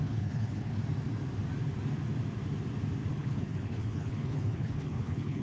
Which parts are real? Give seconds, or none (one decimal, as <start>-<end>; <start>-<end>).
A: 0.8-3.1